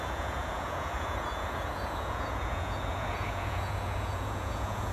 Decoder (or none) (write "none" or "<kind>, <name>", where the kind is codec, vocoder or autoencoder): vocoder, Vocos